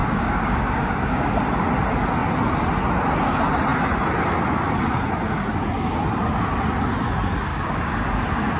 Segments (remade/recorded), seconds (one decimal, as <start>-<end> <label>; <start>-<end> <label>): 0.0-1.3 remade; 1.3-7.5 recorded; 7.5-8.6 remade